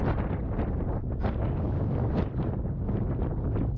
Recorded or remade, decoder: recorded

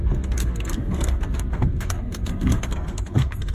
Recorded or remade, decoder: remade, codec, SNAC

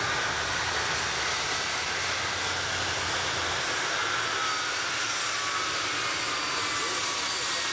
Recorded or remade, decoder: recorded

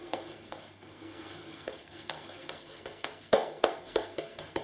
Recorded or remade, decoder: remade, codec, SNAC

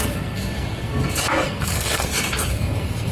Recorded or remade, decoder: remade, codec, SNAC